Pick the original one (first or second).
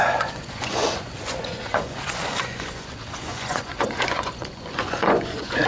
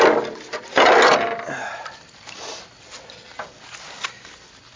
second